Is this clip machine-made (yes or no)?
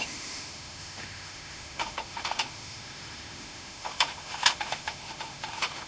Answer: yes